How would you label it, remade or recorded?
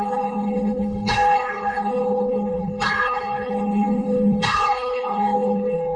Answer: remade